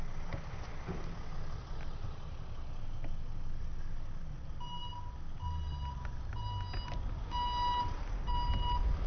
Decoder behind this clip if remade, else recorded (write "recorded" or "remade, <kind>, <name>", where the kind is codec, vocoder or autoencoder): recorded